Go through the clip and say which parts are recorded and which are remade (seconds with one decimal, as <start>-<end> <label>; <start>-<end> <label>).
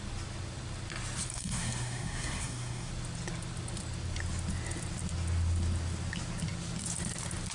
0.0-1.3 recorded; 1.3-2.9 remade; 2.9-7.5 recorded